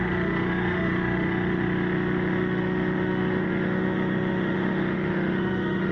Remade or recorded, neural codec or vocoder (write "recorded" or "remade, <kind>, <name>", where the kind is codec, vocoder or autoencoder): remade, autoencoder, DAC-VAE